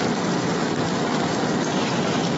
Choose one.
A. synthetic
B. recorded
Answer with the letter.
B